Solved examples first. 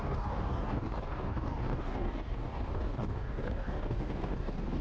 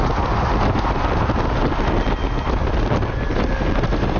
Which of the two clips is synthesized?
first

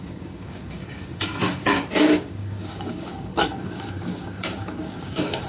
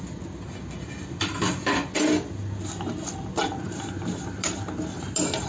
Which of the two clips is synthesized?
first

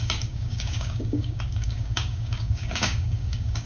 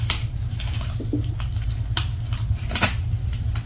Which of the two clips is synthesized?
first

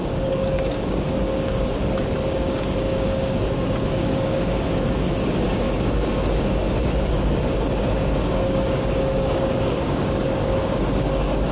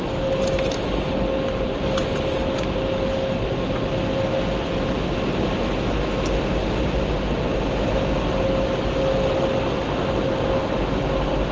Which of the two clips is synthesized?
first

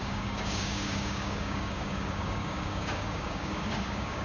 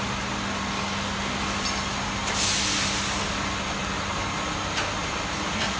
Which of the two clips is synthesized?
first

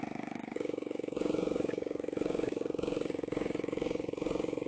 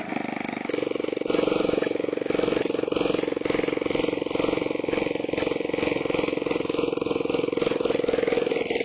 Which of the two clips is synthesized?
first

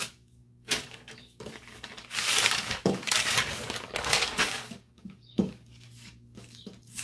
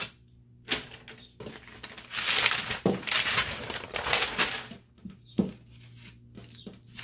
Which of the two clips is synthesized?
first